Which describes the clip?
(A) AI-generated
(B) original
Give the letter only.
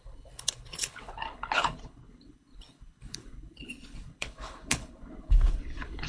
A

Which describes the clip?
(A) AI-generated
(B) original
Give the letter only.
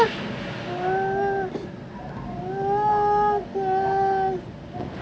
B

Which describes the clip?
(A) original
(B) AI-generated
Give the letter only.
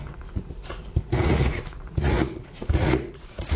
B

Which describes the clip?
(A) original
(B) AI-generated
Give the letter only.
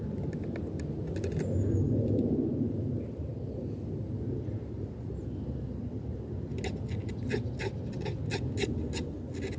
A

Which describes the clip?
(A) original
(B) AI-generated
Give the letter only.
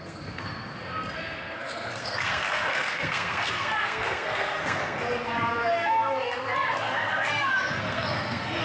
B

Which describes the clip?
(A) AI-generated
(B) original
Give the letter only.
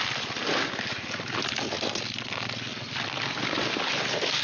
B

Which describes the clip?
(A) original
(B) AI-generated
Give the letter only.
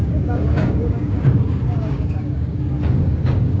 B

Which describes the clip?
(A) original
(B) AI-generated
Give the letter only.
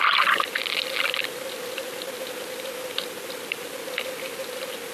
A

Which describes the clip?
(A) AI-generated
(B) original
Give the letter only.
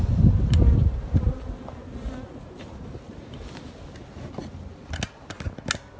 B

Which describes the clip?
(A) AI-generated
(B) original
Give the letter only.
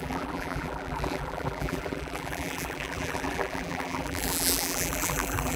A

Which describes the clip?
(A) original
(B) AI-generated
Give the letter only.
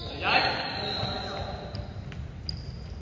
A